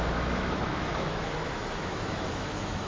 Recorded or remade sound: remade